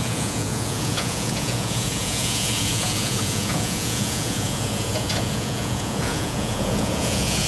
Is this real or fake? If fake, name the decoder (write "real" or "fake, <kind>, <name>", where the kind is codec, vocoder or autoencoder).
fake, vocoder, Vocos